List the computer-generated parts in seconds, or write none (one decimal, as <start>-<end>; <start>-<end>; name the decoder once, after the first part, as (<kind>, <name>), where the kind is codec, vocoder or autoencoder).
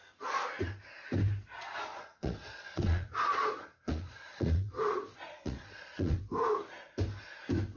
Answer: 1.9-6.2 (vocoder, Vocos)